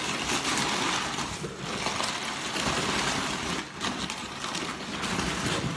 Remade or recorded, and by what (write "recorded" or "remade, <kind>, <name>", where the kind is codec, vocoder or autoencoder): recorded